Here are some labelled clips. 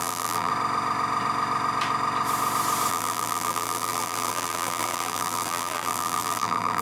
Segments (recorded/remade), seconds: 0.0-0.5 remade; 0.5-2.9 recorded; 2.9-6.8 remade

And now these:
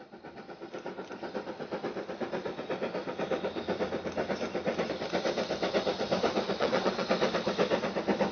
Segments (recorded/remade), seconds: 0.0-6.6 recorded; 6.6-7.1 remade; 7.1-8.3 recorded

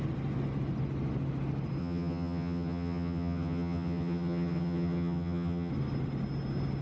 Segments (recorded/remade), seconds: 0.0-1.8 recorded; 1.8-5.7 remade; 5.7-6.8 recorded